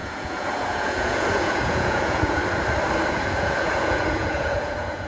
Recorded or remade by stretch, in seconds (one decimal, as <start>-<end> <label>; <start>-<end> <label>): 0.0-2.4 remade; 2.4-3.1 recorded; 3.1-5.1 remade